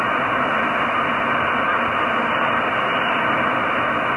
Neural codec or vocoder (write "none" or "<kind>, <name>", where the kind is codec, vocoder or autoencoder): none